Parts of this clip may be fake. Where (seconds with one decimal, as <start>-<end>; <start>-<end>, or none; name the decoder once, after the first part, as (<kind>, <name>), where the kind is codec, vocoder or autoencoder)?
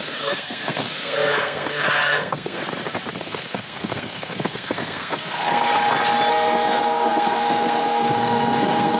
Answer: 0.0-2.6 (codec, SNAC); 3.2-5.7; 6.3-9.0